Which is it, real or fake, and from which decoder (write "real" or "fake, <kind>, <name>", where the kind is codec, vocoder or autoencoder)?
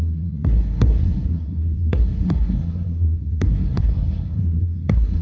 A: fake, codec, SNAC